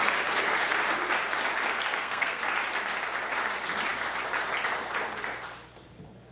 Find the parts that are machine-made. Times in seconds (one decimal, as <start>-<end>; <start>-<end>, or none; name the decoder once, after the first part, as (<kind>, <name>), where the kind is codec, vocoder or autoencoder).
1.8-2.4 (codec, SNAC)